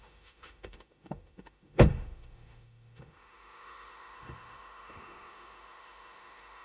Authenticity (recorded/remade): remade